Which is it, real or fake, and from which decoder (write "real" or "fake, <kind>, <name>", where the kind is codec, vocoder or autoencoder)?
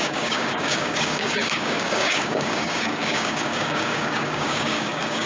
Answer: fake, codec, DAC